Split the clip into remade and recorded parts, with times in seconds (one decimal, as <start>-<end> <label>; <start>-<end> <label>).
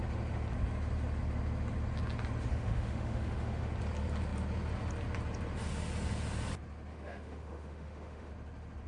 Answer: 0.0-2.5 recorded; 2.5-3.7 remade; 3.7-6.9 recorded; 6.9-8.3 remade; 8.3-8.9 recorded